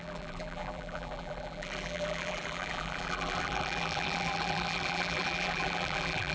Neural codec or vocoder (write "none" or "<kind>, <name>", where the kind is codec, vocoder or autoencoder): vocoder, BigVGAN v2